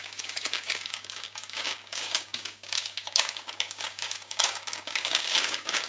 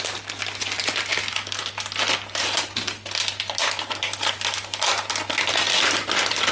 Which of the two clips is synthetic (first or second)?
first